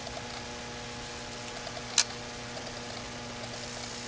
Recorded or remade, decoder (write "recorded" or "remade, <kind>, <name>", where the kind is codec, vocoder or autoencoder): recorded